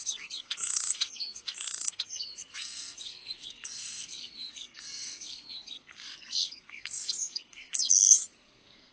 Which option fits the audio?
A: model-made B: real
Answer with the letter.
A